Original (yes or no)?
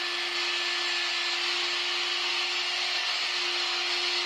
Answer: yes